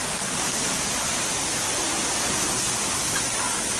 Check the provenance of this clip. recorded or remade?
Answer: recorded